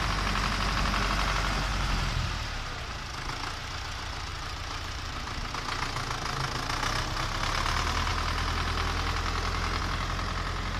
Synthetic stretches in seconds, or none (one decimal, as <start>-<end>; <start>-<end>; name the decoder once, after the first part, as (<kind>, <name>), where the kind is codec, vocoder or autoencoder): 1.7-2.8 (vocoder, BigVGAN v2); 4.3-5.5